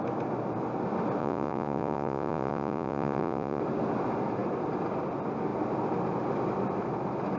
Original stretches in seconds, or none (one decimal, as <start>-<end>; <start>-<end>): 0.0-1.2; 3.6-7.4